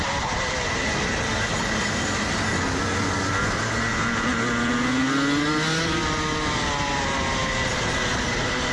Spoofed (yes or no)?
no